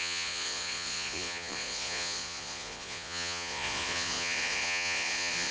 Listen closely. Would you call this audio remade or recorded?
remade